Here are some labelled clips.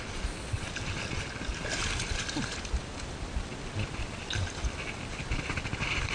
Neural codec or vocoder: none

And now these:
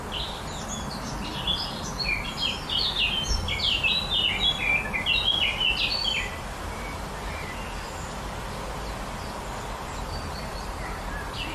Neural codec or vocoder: none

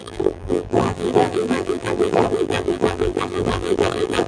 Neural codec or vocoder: vocoder, BigVGAN v2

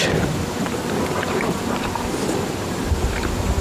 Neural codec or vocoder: vocoder, BigVGAN v2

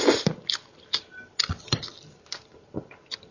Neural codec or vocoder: none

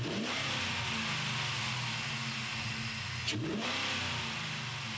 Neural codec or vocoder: none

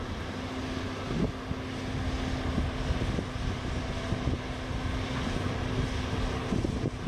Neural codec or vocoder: none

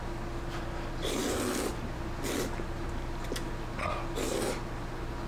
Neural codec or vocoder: none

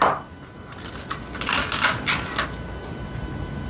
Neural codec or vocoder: none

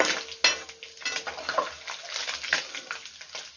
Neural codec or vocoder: none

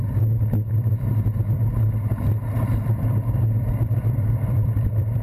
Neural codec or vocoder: vocoder, BigVGAN v2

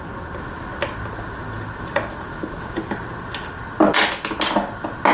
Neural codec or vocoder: none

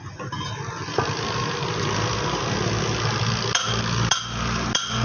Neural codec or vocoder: vocoder, BigVGAN v2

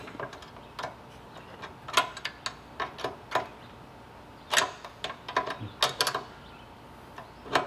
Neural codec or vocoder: none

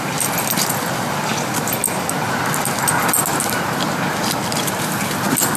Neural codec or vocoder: none